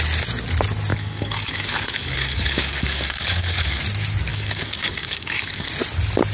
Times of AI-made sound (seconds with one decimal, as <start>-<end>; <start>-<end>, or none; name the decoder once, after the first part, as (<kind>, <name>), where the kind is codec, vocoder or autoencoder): 0.9-3.8 (codec, DAC); 4.3-5.7

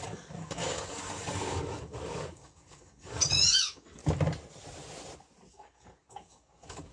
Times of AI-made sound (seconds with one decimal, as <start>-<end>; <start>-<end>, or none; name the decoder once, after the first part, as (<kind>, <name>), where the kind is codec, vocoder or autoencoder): 0.0-4.0 (codec, DAC); 5.5-6.9